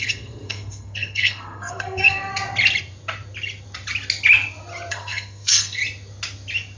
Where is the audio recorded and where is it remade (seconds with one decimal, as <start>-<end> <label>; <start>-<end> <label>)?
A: 0.0-2.3 remade; 2.3-4.9 recorded; 4.9-5.8 remade; 5.8-6.8 recorded